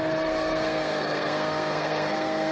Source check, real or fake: fake